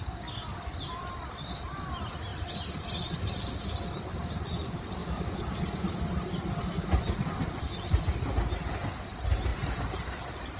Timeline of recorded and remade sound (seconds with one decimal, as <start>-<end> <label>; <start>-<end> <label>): 0.0-2.3 recorded; 2.3-3.4 remade; 3.4-5.0 recorded; 5.0-6.0 remade; 6.0-9.5 recorded; 9.5-10.6 remade